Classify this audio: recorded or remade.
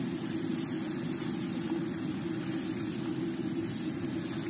recorded